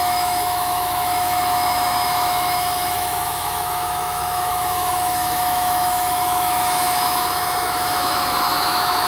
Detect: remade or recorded remade